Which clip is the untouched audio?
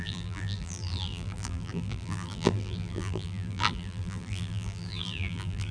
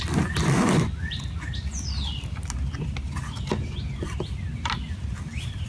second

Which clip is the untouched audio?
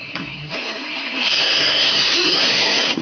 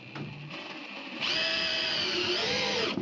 second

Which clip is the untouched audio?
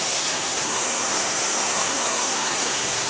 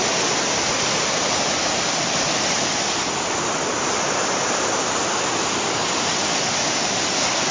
second